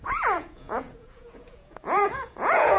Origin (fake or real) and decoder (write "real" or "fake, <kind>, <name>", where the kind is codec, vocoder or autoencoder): fake, vocoder, Vocos